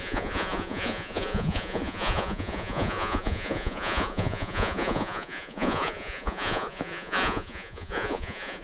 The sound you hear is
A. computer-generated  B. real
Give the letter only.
A